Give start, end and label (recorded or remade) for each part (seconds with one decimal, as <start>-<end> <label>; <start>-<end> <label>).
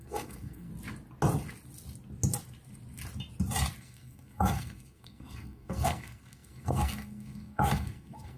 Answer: 0.0-0.7 remade; 0.7-3.8 recorded; 3.8-8.4 remade